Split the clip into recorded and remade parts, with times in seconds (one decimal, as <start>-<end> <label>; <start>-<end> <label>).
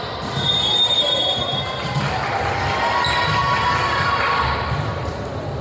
0.0-5.6 recorded